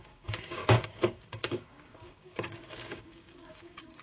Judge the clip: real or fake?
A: fake